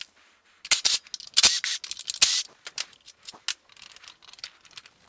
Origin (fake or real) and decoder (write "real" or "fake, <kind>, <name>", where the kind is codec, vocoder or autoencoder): real